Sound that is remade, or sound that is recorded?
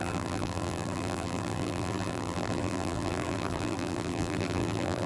remade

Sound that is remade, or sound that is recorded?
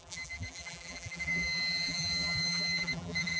remade